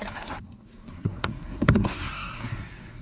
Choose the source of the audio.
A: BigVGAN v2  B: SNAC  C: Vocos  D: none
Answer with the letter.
B